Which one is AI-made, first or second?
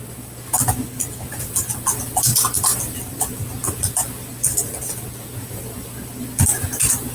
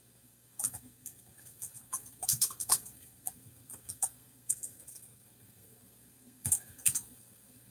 second